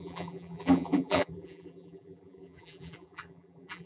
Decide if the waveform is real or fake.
fake